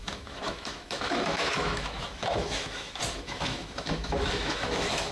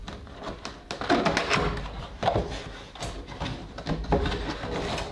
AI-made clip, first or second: first